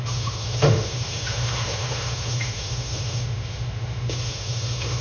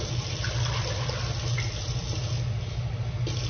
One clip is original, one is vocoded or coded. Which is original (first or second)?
second